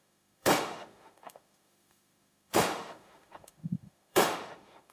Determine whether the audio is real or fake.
fake